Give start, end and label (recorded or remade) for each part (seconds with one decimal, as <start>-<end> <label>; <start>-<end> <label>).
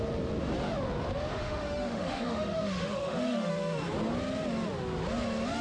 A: 0.0-1.3 recorded; 1.3-3.5 remade; 3.5-5.6 recorded